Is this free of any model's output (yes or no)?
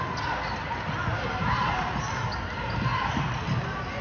yes